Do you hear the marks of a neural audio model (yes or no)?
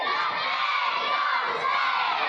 no